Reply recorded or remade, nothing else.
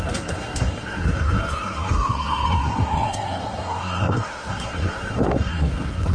remade